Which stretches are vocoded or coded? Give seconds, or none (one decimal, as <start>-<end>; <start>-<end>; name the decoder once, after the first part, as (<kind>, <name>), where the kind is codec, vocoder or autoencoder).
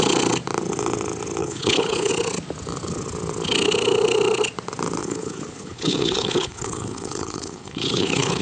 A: 1.4-2.1 (codec, HILCodec); 5.0-8.4